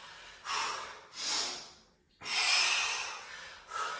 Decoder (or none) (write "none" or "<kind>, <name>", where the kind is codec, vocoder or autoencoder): none